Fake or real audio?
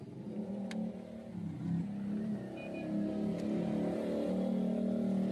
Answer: real